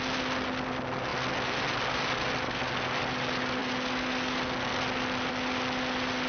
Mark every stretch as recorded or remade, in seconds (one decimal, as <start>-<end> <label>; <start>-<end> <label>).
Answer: 0.0-6.3 recorded